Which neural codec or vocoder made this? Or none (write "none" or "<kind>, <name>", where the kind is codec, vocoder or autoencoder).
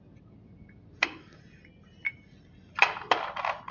none